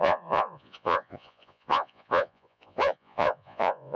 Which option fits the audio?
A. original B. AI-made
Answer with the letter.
B